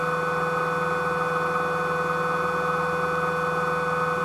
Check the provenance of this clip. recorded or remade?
recorded